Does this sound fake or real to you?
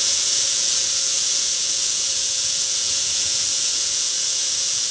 fake